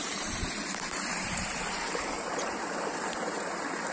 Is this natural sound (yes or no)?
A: no